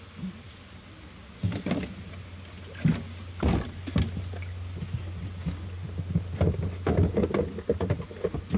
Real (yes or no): yes